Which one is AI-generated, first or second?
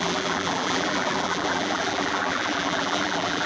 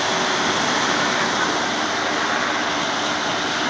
first